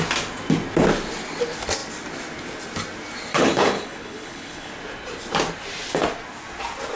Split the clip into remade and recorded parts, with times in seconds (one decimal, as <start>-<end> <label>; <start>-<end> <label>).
0.0-3.3 recorded; 3.3-4.7 remade; 4.7-7.0 recorded